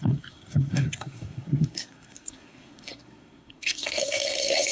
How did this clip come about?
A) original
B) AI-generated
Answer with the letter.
B